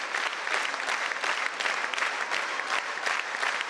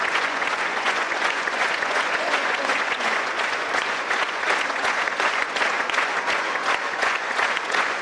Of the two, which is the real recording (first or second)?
first